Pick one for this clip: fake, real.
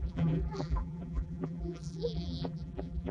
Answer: fake